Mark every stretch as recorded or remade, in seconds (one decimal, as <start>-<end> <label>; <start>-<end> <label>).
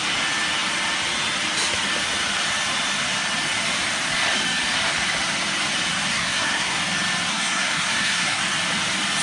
0.0-6.1 recorded; 6.1-6.8 remade; 6.8-7.3 recorded; 7.3-8.4 remade; 8.4-9.2 recorded